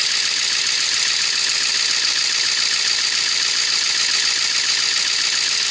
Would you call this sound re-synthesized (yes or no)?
no